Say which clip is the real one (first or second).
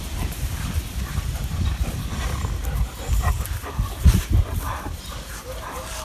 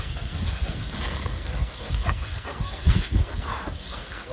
first